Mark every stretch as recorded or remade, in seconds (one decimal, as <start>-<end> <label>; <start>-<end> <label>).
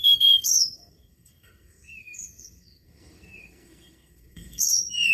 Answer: 0.0-5.1 remade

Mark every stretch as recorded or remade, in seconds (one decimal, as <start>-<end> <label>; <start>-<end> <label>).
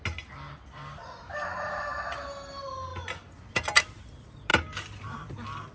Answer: 0.0-1.0 recorded; 1.0-2.0 remade; 2.0-4.5 recorded; 4.5-5.3 remade; 5.3-5.7 recorded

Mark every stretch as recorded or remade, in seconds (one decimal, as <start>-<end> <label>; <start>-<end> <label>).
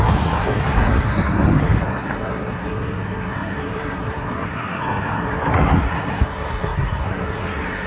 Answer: 0.0-7.9 remade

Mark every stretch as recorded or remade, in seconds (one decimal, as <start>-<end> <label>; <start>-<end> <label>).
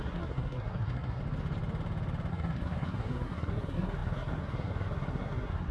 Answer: 0.0-1.2 remade; 1.2-2.3 recorded; 2.3-5.7 remade